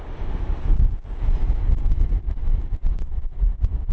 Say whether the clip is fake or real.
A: real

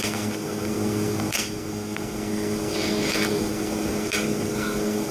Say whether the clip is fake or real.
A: fake